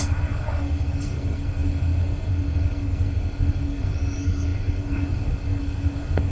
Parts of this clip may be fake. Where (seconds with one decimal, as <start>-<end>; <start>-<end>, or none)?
0.0-6.3